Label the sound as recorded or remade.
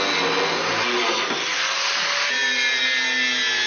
recorded